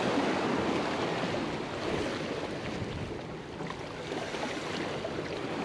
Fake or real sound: real